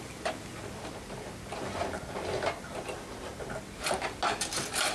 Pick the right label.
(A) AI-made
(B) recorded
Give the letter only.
B